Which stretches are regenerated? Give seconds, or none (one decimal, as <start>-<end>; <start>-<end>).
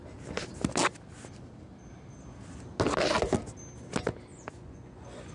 4.3-5.3